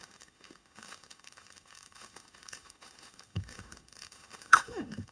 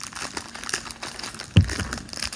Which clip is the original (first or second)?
second